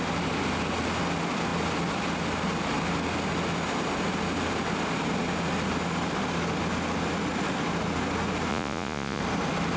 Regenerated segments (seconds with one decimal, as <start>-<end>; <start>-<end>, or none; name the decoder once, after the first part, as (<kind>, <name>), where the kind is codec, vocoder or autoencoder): 8.5-9.2 (vocoder, Vocos)